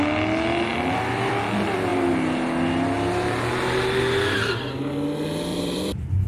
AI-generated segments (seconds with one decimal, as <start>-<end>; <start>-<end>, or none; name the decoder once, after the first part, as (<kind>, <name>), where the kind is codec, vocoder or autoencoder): 0.7-1.3 (vocoder, BigVGAN v2); 5.5-6.3